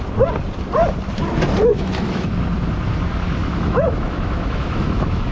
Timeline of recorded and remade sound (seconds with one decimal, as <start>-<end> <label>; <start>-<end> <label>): 0.0-1.7 recorded; 1.7-2.2 remade; 2.2-3.4 recorded; 3.4-5.3 remade